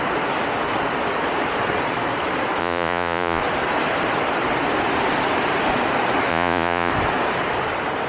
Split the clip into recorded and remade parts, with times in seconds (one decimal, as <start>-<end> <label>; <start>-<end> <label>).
0.0-2.6 recorded; 2.6-3.4 remade; 3.4-6.3 recorded; 6.3-6.9 remade; 6.9-8.1 recorded